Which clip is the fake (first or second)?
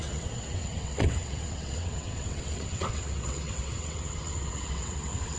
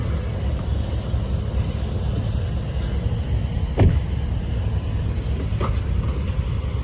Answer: first